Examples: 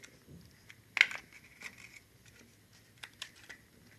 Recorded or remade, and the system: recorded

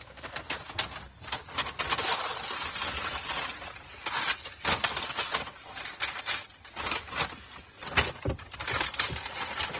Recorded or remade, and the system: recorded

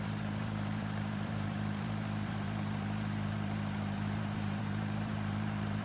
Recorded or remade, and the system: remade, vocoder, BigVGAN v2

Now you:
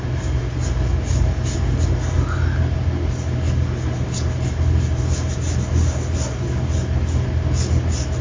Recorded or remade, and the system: recorded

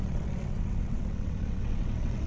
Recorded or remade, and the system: remade, vocoder, WaveNeXt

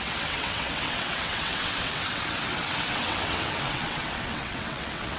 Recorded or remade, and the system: remade, vocoder, WaveNeXt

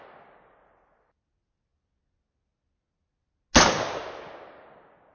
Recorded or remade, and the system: recorded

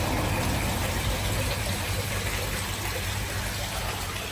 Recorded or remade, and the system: recorded